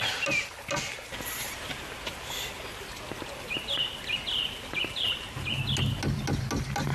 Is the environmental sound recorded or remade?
recorded